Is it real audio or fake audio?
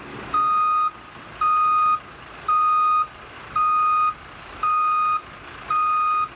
real